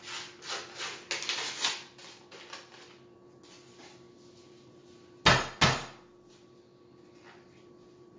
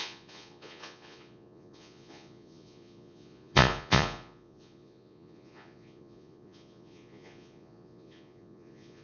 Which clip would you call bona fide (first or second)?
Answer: first